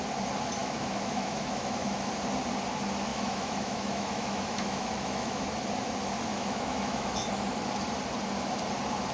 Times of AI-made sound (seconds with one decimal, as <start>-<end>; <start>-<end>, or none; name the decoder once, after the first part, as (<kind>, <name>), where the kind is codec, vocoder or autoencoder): 0.6-2.1 (autoencoder, DAC-VAE); 3.1-5.5; 6.3-7.3